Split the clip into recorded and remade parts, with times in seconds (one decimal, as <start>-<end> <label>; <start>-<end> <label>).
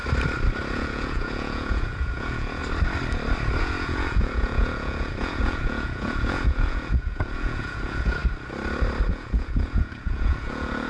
0.0-0.7 recorded; 0.7-2.6 remade; 2.6-3.6 recorded; 3.6-8.2 remade; 8.2-9.1 recorded; 9.1-10.9 remade